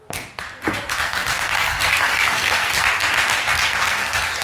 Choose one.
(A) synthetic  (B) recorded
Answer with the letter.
A